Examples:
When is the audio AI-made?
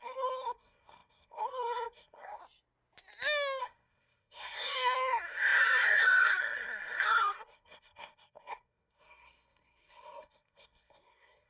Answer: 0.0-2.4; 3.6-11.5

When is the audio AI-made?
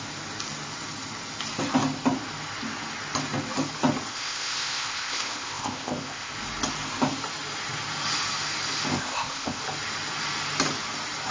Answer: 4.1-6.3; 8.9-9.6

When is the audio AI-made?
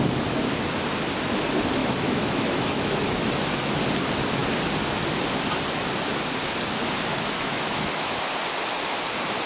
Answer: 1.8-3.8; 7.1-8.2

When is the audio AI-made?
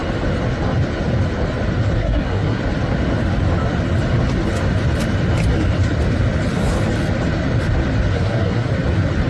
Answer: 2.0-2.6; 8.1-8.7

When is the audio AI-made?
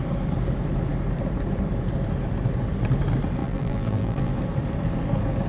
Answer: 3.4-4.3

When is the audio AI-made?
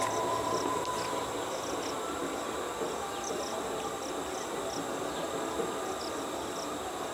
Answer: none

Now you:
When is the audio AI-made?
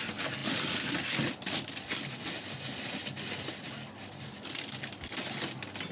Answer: none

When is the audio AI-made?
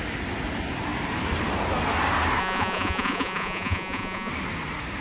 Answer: 2.4-4.3